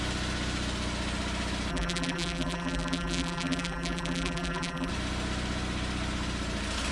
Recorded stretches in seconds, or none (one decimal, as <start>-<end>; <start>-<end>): 0.0-1.7; 4.9-6.9